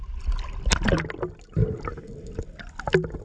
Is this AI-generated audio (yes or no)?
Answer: no